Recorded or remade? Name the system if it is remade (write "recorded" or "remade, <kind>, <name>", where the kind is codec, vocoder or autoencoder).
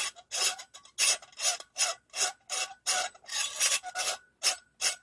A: recorded